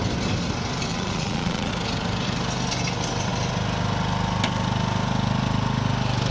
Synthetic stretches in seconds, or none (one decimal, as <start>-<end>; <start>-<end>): 0.9-1.7

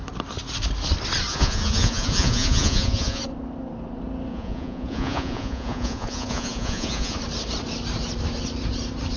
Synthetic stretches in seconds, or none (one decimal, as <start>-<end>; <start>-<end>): 1.3-3.2; 4.3-7.2

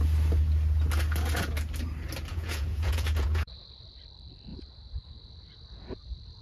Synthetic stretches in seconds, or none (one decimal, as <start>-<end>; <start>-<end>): 2.3-4.0; 4.5-6.4

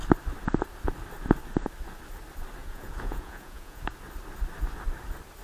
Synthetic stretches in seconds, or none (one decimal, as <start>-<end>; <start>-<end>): 2.6-3.8